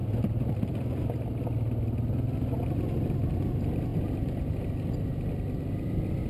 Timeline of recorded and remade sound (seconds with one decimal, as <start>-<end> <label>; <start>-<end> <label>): 0.0-6.3 recorded